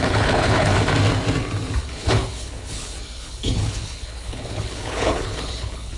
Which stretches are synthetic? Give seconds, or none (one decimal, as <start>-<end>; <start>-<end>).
0.0-0.7; 1.8-6.0